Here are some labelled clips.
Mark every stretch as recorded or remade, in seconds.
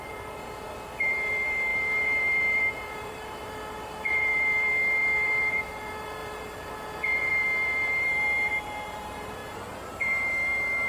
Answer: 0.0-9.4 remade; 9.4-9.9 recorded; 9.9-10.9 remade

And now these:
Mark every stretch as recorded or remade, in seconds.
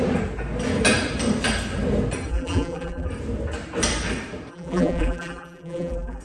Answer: 0.0-2.3 recorded; 2.3-3.1 remade; 3.1-4.5 recorded; 4.5-6.2 remade